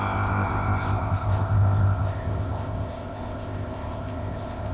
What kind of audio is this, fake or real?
fake